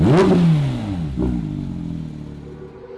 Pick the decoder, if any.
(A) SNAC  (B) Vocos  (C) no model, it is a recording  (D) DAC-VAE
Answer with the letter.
C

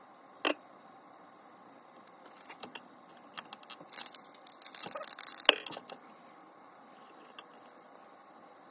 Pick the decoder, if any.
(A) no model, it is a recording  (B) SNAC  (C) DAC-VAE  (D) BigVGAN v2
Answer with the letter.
A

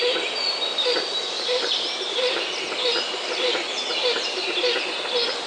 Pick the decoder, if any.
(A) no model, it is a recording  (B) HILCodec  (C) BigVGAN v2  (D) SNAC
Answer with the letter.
A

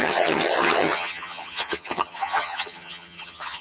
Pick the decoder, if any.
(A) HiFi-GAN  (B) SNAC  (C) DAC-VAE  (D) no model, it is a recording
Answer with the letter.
A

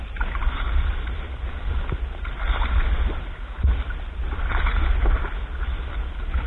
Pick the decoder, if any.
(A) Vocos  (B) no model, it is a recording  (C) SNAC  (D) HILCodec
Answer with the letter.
B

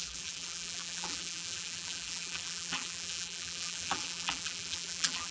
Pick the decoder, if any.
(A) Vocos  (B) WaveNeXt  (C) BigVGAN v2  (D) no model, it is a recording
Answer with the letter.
C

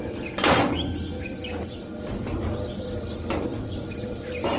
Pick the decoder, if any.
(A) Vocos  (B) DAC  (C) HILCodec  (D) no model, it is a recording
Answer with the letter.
D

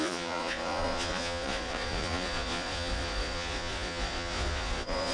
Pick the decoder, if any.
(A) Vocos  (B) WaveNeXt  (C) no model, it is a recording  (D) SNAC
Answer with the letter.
A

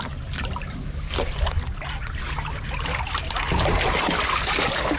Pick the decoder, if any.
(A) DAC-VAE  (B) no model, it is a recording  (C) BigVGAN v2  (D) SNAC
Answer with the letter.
B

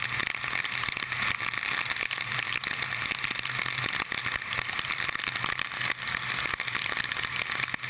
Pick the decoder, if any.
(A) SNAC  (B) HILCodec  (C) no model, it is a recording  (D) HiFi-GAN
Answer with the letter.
C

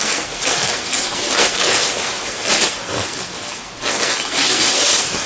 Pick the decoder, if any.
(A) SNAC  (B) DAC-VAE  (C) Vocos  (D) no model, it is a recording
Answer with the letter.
A